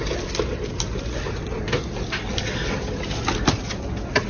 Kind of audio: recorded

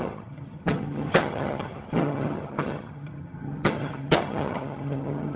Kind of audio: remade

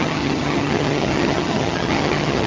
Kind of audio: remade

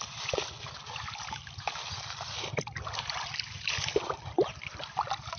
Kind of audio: recorded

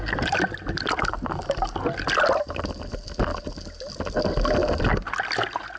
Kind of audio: recorded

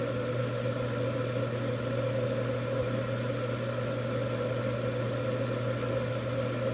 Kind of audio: recorded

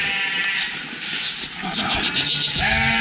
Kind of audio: recorded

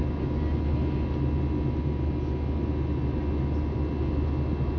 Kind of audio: recorded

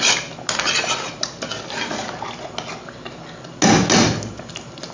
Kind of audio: recorded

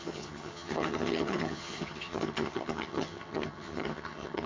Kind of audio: remade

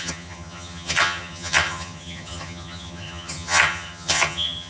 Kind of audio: remade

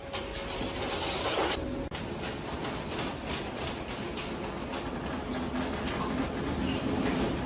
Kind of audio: recorded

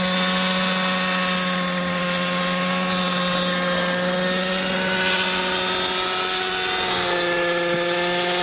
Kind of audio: recorded